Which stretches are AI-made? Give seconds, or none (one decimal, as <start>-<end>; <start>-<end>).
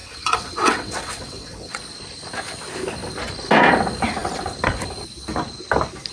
0.0-1.8